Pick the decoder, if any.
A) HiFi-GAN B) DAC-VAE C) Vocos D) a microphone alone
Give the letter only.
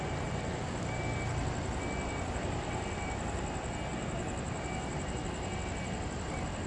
D